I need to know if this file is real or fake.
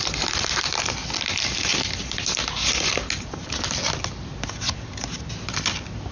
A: real